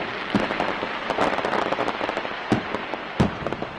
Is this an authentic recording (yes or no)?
yes